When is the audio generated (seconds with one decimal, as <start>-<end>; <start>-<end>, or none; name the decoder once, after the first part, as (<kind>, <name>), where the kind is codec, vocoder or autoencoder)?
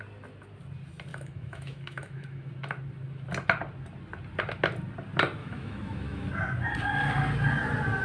1.1-2.5 (autoencoder, DAC-VAE); 5.4-6.3